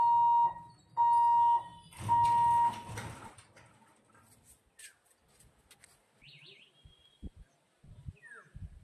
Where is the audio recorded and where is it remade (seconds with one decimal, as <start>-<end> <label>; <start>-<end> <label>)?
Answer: 0.0-8.8 recorded